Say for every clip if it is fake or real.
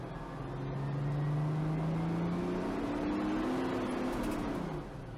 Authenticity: real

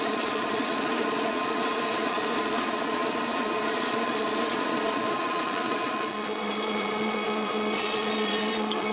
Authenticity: fake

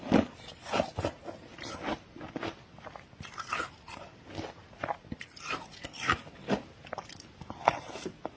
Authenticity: real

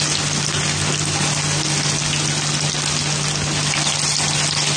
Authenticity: real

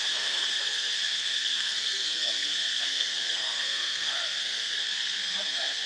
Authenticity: fake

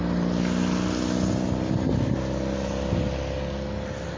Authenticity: real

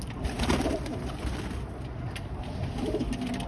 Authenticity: real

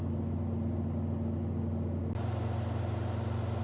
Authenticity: real